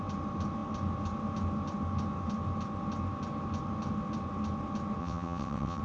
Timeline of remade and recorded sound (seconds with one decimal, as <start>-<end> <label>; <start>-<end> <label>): 0.0-5.0 recorded; 5.0-5.8 remade